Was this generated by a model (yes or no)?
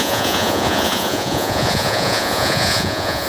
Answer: yes